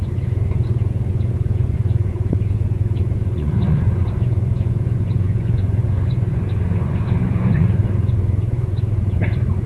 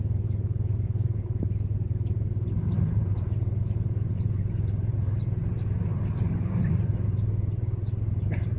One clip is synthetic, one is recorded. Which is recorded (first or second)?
second